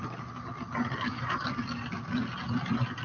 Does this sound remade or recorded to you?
recorded